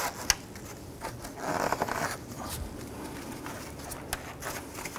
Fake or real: real